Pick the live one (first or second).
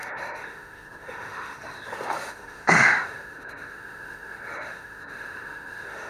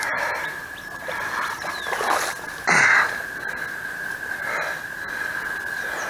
second